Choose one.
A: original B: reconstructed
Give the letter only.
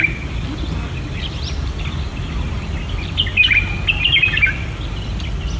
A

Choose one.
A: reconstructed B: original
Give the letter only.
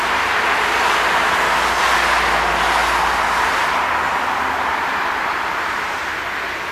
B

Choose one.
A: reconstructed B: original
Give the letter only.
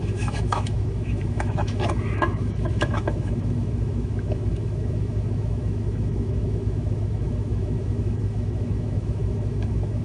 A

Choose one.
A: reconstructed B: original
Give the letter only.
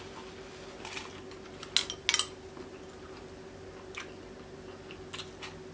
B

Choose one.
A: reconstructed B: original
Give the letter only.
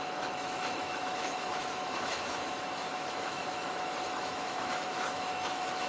A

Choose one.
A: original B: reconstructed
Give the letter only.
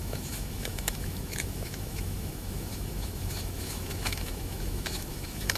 B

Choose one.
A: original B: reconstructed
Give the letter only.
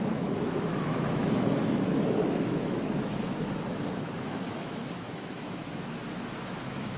B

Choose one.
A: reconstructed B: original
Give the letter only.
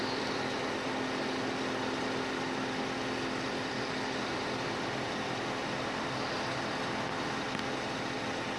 B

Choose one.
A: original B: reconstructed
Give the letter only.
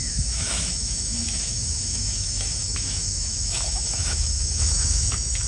B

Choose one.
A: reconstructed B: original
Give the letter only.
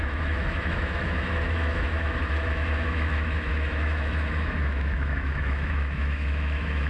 A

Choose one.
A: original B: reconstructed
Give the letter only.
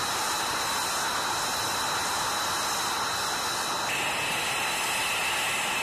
A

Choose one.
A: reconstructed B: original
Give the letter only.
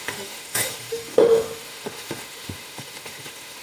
A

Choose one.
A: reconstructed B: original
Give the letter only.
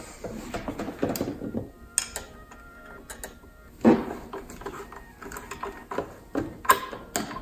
B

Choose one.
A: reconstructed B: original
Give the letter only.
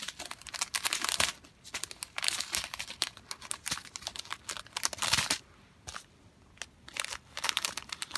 B